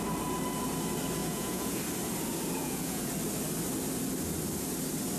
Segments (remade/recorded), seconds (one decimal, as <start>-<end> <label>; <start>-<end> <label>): 0.0-1.2 recorded; 1.2-1.8 remade; 1.8-2.6 recorded; 2.6-3.1 remade; 3.1-5.2 recorded